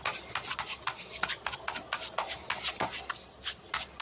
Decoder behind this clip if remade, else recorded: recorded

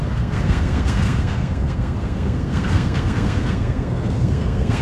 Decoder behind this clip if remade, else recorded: remade, codec, SNAC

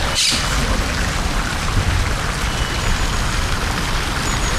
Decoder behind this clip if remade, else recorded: recorded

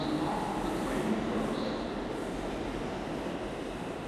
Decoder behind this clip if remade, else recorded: recorded